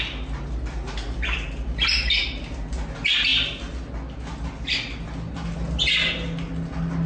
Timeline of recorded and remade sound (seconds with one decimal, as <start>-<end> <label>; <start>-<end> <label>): 0.0-7.1 recorded